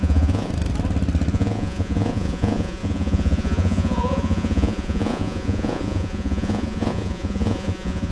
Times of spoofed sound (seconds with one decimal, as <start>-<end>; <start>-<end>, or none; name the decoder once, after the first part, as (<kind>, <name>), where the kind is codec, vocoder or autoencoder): 0.0-0.5 (vocoder, Vocos); 1.3-8.1